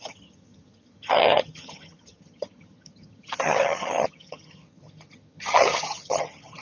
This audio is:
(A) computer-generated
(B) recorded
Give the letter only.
A